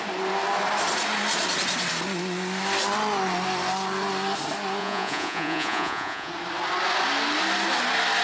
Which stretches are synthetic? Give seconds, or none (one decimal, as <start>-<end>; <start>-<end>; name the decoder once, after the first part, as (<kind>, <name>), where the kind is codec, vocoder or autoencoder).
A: 4.8-6.3 (vocoder, Vocos)